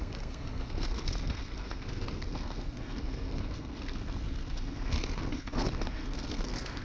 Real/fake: fake